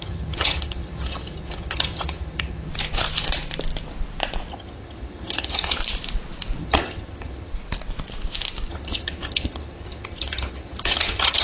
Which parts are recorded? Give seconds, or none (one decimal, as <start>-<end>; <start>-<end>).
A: 2.7-4.5; 5.8-6.6; 7.5-8.7